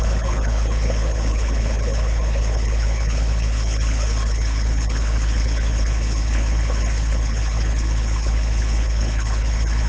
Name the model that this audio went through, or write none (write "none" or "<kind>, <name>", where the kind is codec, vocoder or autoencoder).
codec, HILCodec